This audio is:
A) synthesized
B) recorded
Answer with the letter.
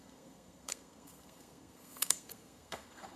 A